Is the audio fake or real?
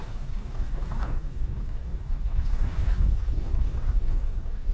fake